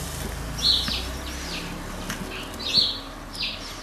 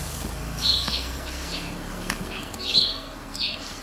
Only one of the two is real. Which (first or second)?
first